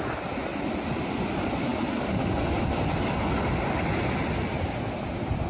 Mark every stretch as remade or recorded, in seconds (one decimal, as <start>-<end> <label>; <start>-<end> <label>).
0.0-0.5 recorded; 0.5-1.0 remade; 1.0-5.5 recorded